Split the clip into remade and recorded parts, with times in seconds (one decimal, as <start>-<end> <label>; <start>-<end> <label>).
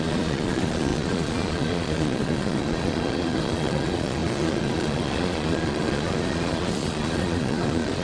0.0-8.0 remade